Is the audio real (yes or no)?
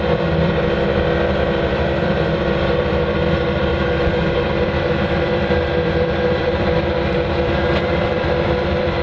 no